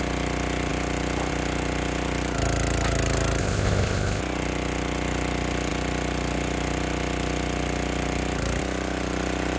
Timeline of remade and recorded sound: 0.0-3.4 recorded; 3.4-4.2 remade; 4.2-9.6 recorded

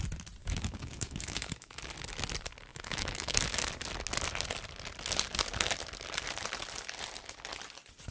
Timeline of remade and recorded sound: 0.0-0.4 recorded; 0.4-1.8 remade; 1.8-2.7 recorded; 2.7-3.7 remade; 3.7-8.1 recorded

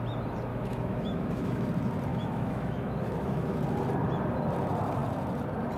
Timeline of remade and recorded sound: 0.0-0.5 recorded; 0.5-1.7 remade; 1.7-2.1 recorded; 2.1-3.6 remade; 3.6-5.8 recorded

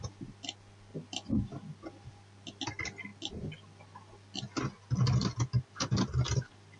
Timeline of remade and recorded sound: 0.0-6.8 recorded

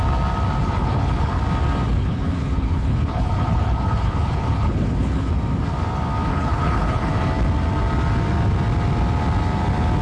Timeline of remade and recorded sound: 0.0-0.6 recorded; 0.6-1.4 remade; 1.4-2.0 recorded; 2.0-5.3 remade; 5.3-6.3 recorded; 6.3-7.1 remade; 7.1-10.0 recorded